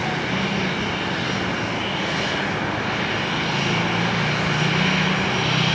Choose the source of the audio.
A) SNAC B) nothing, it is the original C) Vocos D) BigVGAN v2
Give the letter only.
B